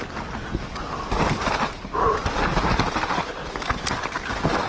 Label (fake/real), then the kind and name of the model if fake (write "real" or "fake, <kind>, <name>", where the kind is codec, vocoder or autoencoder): real